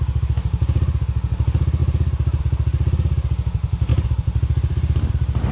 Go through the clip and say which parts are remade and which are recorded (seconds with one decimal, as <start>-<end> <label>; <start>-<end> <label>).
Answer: 0.0-1.8 recorded; 1.8-2.4 remade; 2.4-3.9 recorded; 3.9-5.1 remade; 5.1-5.5 recorded

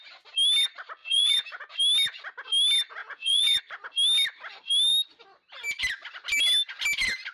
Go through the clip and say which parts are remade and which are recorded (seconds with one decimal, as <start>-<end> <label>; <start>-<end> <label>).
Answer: 0.0-1.0 recorded; 1.0-1.6 remade; 1.6-3.0 recorded; 3.0-3.6 remade; 3.6-7.3 recorded

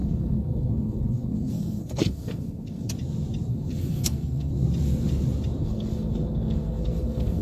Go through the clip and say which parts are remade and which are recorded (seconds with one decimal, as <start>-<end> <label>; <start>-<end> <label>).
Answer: 0.0-2.9 remade; 2.9-3.5 recorded; 3.5-4.5 remade; 4.5-5.6 recorded; 5.6-7.4 remade

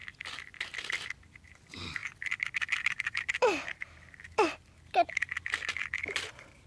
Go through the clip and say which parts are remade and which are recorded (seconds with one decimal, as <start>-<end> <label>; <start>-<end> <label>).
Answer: 0.0-6.7 remade

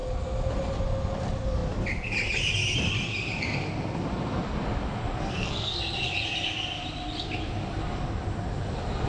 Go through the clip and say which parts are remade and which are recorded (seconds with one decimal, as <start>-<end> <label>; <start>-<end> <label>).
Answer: 0.0-5.2 recorded; 5.2-5.8 remade; 5.8-9.1 recorded

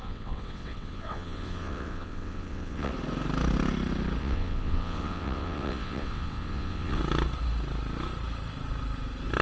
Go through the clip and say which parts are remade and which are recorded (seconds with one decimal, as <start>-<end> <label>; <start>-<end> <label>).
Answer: 0.0-2.9 remade; 2.9-4.2 recorded; 4.2-7.0 remade; 7.0-9.4 recorded